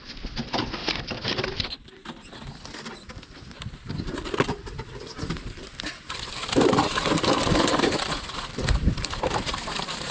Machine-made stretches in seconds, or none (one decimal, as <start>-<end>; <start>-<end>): 0.0-0.8; 1.4-10.1